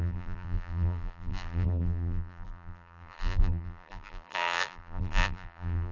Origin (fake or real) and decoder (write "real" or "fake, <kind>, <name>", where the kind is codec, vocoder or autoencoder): fake, vocoder, BigVGAN v2